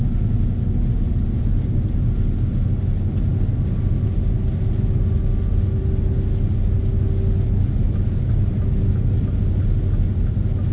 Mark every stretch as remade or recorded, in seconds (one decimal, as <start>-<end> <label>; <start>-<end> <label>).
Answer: 0.0-10.7 recorded